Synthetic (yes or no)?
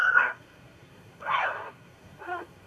yes